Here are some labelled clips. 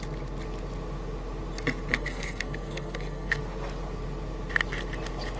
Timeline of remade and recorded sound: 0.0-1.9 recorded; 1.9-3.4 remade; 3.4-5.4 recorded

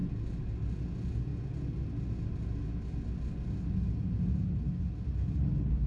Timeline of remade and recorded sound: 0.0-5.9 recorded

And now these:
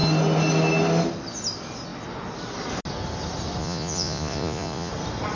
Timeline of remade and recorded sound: 0.0-3.6 recorded; 3.6-4.9 remade; 4.9-5.4 recorded

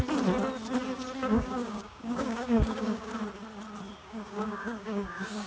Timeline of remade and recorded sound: 0.0-1.2 recorded; 1.2-3.1 remade; 3.1-4.0 recorded; 4.0-5.5 remade

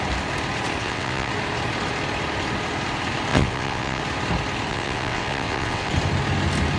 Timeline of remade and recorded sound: 0.0-0.8 recorded; 0.8-1.3 remade; 1.3-3.3 recorded; 3.3-4.0 remade; 4.0-4.7 recorded; 4.7-5.9 remade; 5.9-6.8 recorded

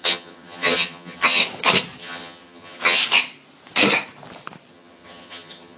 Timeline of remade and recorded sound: 0.0-1.4 remade; 1.4-2.0 recorded; 2.0-3.0 remade; 3.0-4.7 recorded; 4.7-5.8 remade

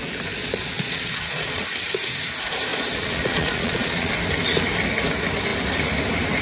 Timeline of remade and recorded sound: 0.0-0.4 recorded; 0.4-1.6 remade; 1.6-2.7 recorded; 2.7-4.1 remade; 4.1-6.4 recorded